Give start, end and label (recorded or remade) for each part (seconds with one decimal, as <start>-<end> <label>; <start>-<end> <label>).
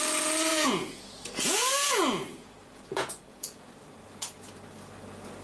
0.0-0.5 recorded; 0.5-3.7 remade; 3.7-5.4 recorded